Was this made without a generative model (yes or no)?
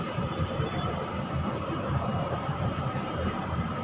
no